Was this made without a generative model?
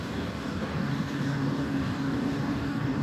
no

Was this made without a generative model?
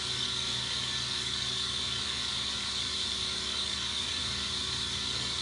no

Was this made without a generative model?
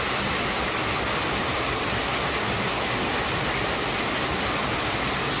yes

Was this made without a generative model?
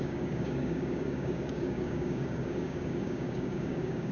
no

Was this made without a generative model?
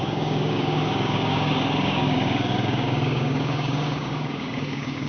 no